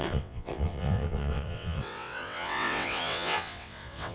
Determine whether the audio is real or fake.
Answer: fake